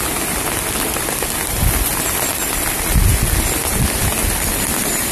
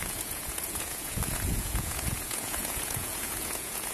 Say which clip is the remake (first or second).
second